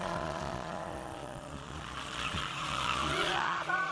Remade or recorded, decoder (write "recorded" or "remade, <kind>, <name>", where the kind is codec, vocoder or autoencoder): remade, vocoder, Vocos